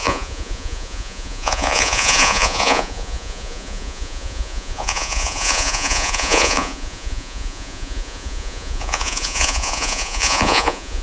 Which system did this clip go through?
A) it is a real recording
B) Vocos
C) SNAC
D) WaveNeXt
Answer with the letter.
B